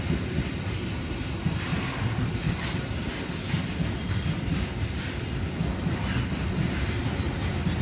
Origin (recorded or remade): recorded